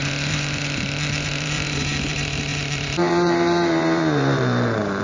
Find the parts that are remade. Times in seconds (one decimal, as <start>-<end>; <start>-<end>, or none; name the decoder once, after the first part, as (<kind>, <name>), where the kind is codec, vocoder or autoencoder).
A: 0.0-5.0 (vocoder, BigVGAN v2)